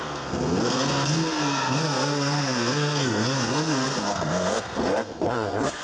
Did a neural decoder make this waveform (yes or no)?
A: yes